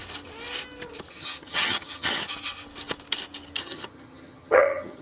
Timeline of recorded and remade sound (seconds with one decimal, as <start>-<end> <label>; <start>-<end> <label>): 0.0-1.1 recorded; 1.1-2.2 remade; 2.2-3.6 recorded; 3.6-5.0 remade